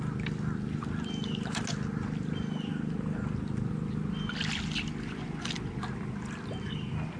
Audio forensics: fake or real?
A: real